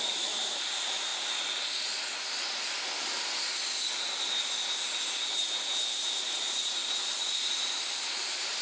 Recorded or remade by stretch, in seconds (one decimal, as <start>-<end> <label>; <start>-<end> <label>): 0.0-1.1 remade; 1.1-6.2 recorded; 6.2-8.6 remade